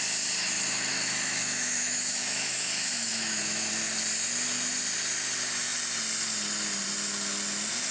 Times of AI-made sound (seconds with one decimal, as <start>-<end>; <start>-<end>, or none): 0.9-3.7